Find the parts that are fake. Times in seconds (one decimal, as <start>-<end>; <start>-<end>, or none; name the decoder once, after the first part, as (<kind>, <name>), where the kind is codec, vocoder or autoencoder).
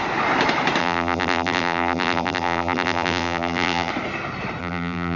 0.8-3.9 (vocoder, BigVGAN v2); 4.6-5.2